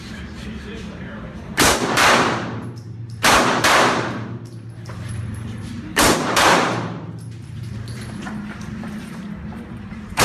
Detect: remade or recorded remade